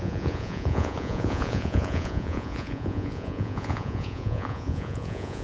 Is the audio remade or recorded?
remade